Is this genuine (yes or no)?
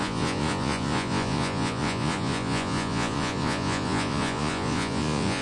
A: no